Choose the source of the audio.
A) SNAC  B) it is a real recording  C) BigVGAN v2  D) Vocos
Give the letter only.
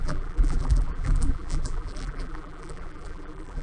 C